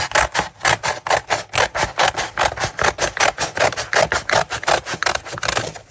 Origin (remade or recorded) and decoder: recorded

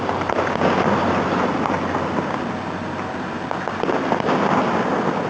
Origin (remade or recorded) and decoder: recorded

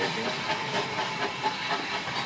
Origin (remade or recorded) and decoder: recorded